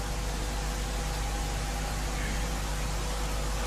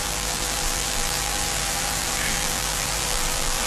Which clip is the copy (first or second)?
second